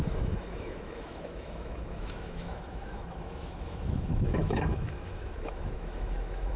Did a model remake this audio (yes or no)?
yes